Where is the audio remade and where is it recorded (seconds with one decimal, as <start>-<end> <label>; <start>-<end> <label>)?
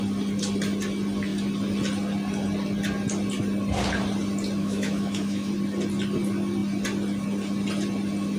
0.0-4.6 recorded; 4.6-5.5 remade; 5.5-8.4 recorded